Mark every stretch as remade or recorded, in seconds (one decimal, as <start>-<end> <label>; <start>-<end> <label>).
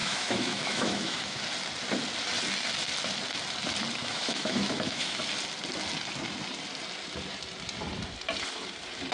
0.0-1.4 remade; 1.4-4.0 recorded; 4.0-5.2 remade; 5.2-9.1 recorded